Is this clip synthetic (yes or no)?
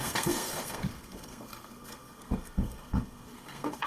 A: yes